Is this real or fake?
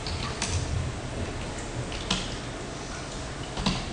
real